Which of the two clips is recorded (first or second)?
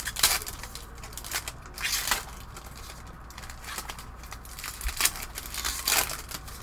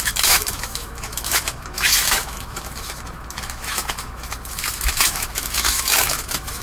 first